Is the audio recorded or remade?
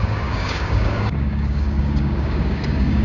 remade